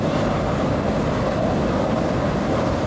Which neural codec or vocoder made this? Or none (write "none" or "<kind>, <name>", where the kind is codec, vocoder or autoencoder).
vocoder, BigVGAN v2